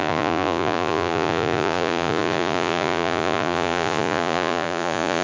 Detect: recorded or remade remade